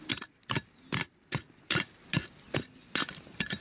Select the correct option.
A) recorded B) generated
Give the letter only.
A